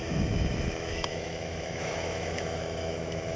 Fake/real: fake